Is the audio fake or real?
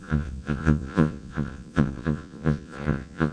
fake